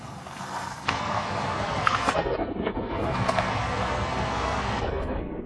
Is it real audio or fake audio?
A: fake